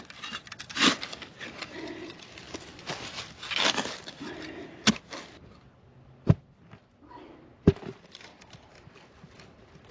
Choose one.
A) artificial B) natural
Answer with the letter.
B